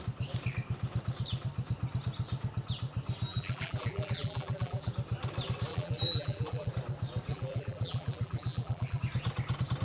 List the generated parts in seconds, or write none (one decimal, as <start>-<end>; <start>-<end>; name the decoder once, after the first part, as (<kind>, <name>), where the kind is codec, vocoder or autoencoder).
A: 3.3-4.9 (vocoder, BigVGAN v2); 5.7-6.7; 7.3-9.0

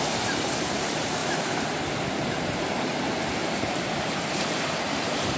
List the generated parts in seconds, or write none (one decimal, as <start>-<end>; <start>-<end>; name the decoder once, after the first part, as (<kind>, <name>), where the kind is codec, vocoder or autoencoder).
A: 0.0-1.2 (vocoder, BigVGAN v2); 1.9-5.4